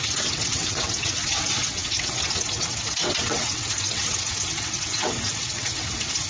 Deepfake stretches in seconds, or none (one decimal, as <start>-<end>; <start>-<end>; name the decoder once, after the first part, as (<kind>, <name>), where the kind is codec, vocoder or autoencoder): 0.0-6.3 (vocoder, WaveNeXt)